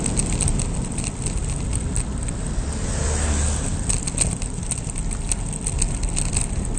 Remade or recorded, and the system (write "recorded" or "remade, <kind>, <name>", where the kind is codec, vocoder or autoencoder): recorded